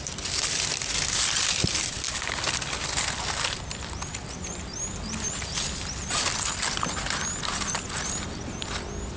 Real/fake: real